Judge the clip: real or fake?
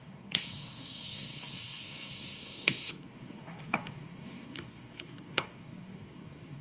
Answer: fake